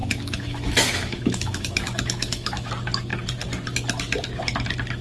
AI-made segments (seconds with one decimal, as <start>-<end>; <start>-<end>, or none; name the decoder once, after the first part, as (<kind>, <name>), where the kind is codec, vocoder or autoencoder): 0.0-2.7 (autoencoder, DAC-VAE)